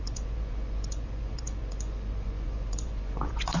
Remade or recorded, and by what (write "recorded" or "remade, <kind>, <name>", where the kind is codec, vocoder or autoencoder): remade, vocoder, Vocos